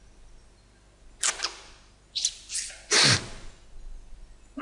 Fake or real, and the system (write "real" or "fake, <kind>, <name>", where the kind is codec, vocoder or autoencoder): real